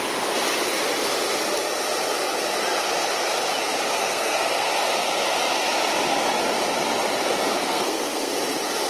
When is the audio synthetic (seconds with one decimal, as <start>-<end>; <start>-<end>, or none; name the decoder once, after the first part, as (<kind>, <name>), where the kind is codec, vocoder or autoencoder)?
4.0-4.7 (codec, SNAC); 7.6-8.3

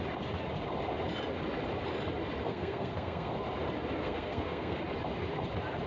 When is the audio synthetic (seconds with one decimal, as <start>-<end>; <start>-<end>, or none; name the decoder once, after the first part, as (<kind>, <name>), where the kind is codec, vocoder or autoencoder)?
2.4-3.3 (codec, SNAC); 4.0-4.8

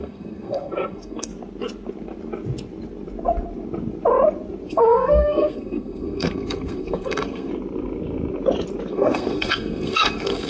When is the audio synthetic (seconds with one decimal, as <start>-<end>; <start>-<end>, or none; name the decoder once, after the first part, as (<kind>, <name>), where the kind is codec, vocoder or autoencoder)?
0.0-1.3 (codec, SNAC); 4.7-7.5; 8.9-10.5

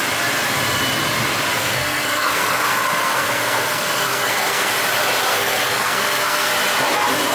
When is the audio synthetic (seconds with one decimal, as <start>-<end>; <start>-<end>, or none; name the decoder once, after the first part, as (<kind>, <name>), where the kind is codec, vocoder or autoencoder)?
1.6-4.7 (codec, SNAC); 5.3-6.5

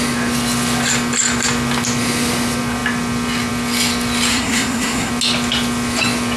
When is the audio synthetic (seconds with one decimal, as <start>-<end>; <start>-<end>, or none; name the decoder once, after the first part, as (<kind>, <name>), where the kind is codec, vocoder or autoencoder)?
4.3-5.1 (codec, SNAC)

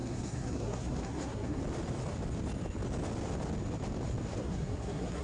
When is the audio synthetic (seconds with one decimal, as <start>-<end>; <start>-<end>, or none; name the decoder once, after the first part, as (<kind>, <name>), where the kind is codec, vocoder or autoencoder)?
0.0-1.6 (codec, SNAC); 4.4-5.2

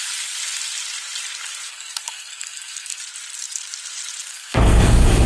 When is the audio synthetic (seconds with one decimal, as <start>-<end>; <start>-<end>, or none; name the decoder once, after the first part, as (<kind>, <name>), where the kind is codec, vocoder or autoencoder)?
1.7-3.0 (codec, SNAC); 4.3-5.3